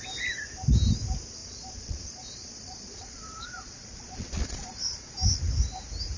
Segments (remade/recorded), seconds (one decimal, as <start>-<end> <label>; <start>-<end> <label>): 0.0-1.4 recorded; 1.4-5.1 remade; 5.1-6.2 recorded